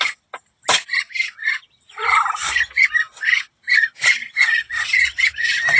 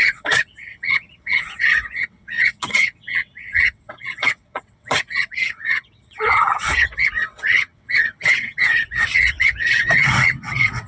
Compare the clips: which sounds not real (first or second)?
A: second